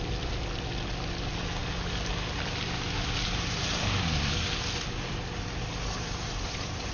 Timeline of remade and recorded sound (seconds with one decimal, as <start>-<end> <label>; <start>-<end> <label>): 0.0-6.9 recorded

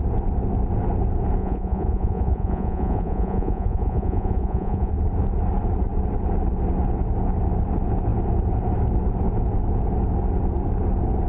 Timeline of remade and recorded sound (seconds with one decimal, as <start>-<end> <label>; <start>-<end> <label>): 0.0-1.4 recorded; 1.4-4.9 remade; 4.9-11.3 recorded

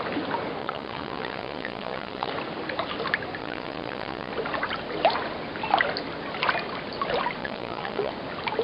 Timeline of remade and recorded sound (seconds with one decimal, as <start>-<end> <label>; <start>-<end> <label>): 0.0-0.6 recorded; 0.6-2.3 remade; 2.3-3.4 recorded; 3.4-4.3 remade; 4.3-7.4 recorded; 7.4-8.1 remade; 8.1-8.6 recorded

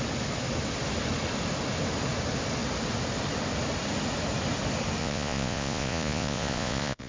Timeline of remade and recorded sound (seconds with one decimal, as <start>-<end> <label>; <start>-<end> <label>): 0.0-5.0 recorded; 5.0-7.1 remade

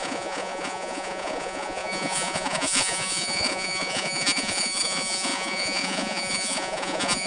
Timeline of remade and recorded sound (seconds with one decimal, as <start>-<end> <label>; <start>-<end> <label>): 0.0-7.3 remade

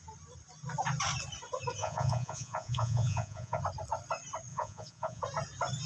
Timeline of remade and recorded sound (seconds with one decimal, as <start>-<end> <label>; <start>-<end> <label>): 0.0-1.8 recorded; 1.8-3.6 remade; 3.6-4.5 recorded; 4.5-5.2 remade; 5.2-5.9 recorded

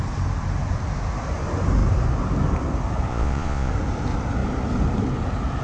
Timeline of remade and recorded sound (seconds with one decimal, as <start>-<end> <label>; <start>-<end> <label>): 0.0-3.1 recorded; 3.1-3.7 remade; 3.7-5.6 recorded